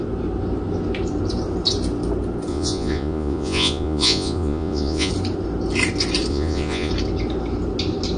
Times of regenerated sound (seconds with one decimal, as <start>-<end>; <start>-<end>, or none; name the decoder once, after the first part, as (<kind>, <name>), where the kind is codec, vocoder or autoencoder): 2.5-5.1 (vocoder, Vocos); 6.3-6.9